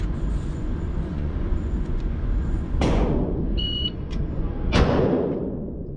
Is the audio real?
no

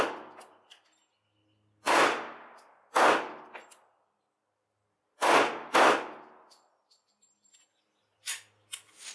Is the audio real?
yes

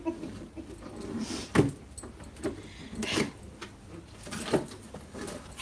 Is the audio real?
yes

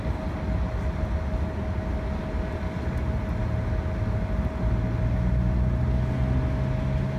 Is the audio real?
yes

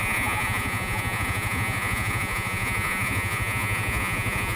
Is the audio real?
no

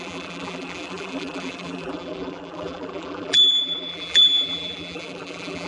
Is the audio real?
no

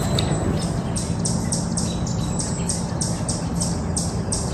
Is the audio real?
yes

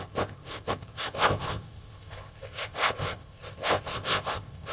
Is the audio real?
no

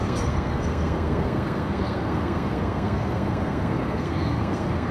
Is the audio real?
no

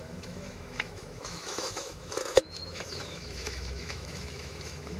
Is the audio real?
no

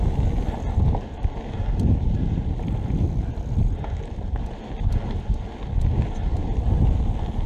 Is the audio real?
yes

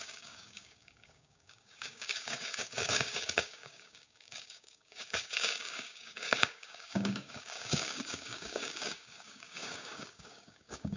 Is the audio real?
no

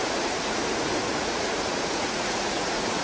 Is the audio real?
no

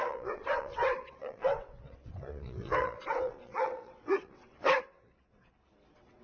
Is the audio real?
no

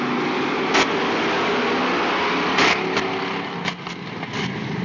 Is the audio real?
yes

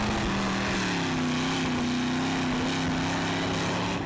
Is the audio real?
yes